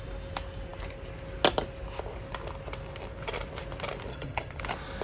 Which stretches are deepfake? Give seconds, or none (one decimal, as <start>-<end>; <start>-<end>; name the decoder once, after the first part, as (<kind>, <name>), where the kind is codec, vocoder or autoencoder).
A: 4.1-4.6 (vocoder, HiFi-GAN)

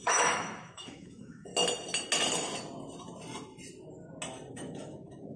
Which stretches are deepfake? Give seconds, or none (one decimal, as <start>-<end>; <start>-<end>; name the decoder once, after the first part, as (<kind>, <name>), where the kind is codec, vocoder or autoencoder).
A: 0.0-1.5 (autoencoder, DAC-VAE); 4.5-5.4